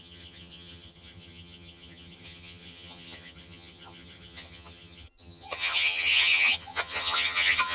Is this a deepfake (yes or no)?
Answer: yes